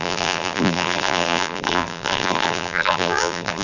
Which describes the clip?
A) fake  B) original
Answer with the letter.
A